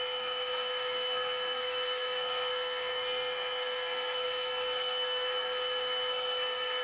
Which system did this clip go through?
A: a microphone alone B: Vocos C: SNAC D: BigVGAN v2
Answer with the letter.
C